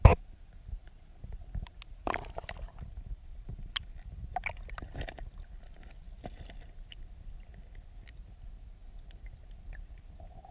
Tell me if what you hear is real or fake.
real